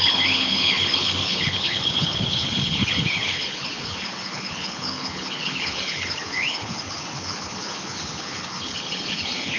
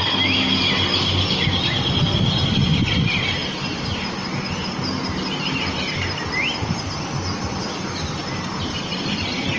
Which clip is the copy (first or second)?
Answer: first